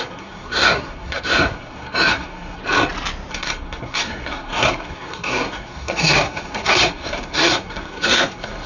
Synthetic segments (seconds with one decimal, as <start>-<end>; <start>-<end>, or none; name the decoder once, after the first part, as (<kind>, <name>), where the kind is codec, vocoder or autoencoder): 0.0-2.6 (codec, SNAC); 3.3-8.7